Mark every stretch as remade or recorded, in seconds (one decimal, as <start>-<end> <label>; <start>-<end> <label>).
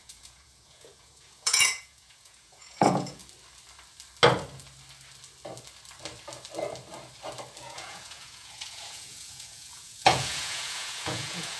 0.0-3.2 remade; 3.2-7.6 recorded; 7.6-11.6 remade